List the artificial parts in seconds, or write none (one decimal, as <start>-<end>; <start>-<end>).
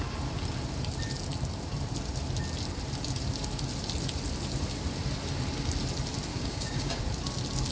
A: 6.3-7.0